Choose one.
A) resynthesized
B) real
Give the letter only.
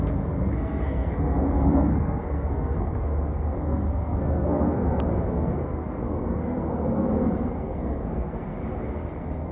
A